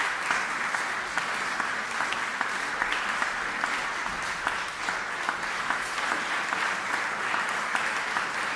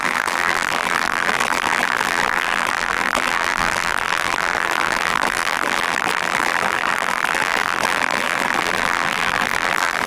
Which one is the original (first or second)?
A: first